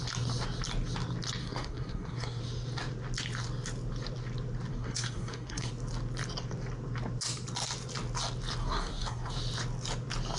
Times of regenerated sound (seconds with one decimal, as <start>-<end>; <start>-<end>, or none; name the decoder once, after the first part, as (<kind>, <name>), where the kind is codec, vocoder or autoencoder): 1.4-2.4 (codec, SNAC); 4.7-5.7; 8.6-9.3

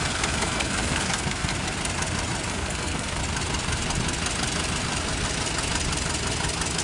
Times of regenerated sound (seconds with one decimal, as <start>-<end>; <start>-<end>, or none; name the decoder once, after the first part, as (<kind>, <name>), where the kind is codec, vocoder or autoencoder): 0.0-1.5 (codec, SNAC); 2.5-3.2